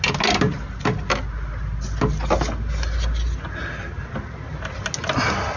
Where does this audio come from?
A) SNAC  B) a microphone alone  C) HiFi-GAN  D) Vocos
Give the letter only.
B